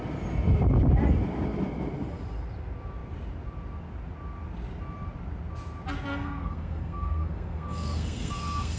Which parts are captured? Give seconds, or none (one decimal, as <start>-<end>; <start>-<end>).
0.0-6.1